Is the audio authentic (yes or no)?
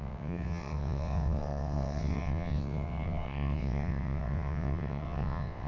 no